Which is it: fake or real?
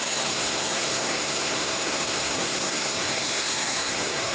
fake